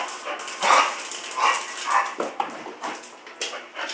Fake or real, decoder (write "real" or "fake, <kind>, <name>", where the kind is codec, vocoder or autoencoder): real